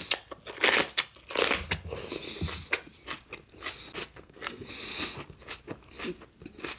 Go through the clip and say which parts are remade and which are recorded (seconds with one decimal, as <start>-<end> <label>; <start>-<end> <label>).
0.0-4.0 recorded; 4.0-4.7 remade; 4.7-6.8 recorded